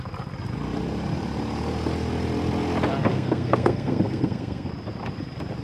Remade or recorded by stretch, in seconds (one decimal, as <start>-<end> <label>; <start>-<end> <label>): 0.0-3.1 recorded; 3.1-4.7 remade; 4.7-5.6 recorded